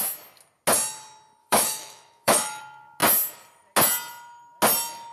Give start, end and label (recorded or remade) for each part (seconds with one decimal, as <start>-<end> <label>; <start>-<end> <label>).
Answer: 0.0-1.4 recorded; 1.4-2.6 remade; 2.6-5.1 recorded